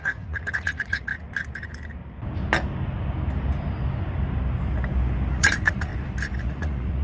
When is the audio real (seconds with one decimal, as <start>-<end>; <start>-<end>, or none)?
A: 1.1-5.3; 5.9-6.4